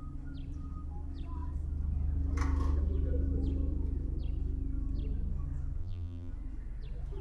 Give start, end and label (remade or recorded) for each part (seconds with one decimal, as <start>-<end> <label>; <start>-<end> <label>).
0.0-5.8 recorded; 5.8-6.3 remade; 6.3-7.2 recorded